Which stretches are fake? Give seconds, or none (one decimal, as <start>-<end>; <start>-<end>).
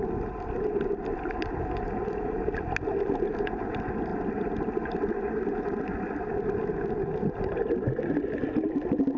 none